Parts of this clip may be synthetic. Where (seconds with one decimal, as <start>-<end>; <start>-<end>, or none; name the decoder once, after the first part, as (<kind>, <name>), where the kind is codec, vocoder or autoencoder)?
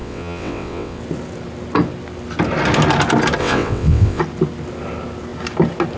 0.0-1.0 (vocoder, WaveNeXt); 3.4-4.2